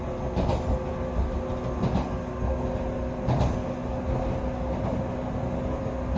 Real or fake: real